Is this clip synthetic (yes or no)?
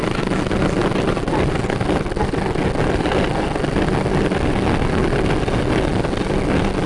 no